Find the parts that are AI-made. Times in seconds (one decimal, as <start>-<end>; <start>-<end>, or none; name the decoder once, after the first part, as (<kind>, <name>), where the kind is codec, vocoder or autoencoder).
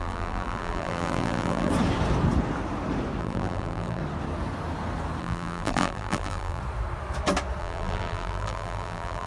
0.0-1.7 (vocoder, BigVGAN v2); 3.2-4.0; 5.2-6.6; 7.6-9.3